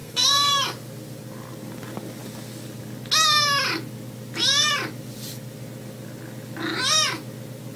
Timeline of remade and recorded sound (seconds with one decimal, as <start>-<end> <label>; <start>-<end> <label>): 0.0-0.5 remade; 0.5-7.8 recorded